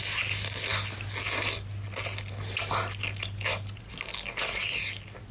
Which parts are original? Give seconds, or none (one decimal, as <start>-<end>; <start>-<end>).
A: 0.0-5.3